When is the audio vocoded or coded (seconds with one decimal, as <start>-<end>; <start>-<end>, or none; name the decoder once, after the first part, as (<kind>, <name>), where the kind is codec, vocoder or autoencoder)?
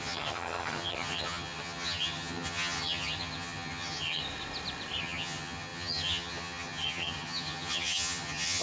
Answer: 0.0-4.2 (vocoder, HiFi-GAN); 5.0-8.6